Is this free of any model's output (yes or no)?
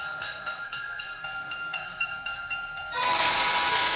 no